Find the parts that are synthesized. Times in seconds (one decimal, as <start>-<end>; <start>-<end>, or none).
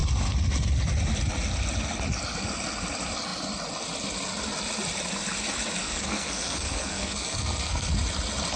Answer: 5.8-7.9